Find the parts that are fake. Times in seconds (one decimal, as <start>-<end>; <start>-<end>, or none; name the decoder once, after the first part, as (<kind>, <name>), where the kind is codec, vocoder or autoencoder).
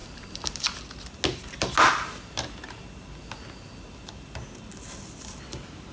none